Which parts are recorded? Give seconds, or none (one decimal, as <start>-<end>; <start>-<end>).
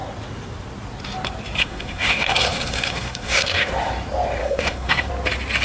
0.0-1.6; 3.7-4.4; 5.1-5.6